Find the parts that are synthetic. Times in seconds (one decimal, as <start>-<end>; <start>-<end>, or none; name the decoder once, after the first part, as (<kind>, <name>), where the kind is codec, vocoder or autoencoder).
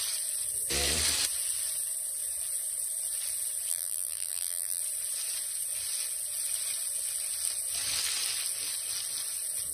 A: 3.7-4.8 (vocoder, BigVGAN v2)